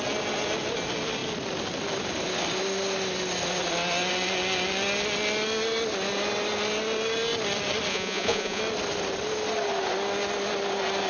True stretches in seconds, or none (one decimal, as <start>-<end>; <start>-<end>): 0.0-7.9; 8.6-11.1